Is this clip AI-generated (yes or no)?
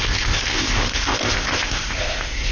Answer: yes